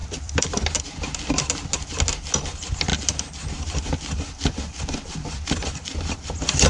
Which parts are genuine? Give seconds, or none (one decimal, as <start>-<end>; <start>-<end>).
0.7-6.7